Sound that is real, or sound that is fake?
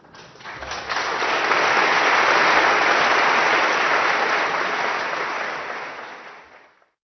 real